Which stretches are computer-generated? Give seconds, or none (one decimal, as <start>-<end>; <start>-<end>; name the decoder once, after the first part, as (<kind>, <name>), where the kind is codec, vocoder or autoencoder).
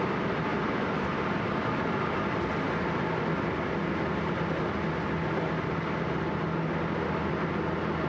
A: none